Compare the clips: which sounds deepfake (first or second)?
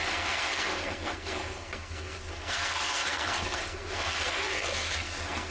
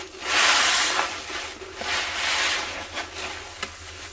first